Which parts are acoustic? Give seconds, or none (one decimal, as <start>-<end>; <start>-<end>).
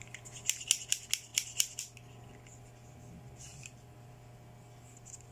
0.0-1.3; 1.8-3.5; 4.1-5.3